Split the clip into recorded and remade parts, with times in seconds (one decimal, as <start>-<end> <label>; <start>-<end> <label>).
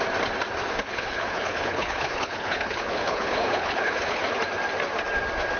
0.0-0.8 recorded; 0.8-4.2 remade; 4.2-5.6 recorded